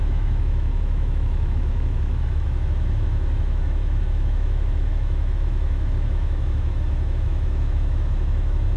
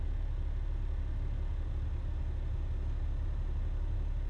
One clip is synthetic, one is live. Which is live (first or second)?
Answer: second